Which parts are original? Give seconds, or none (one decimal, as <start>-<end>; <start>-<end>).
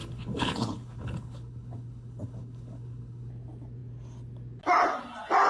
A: 3.3-5.5